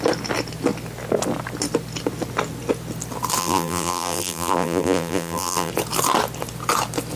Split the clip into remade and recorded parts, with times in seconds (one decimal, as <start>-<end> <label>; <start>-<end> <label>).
0.0-3.4 recorded; 3.4-5.7 remade; 5.7-7.2 recorded